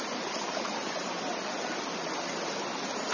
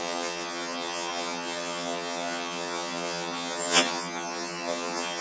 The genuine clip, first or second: first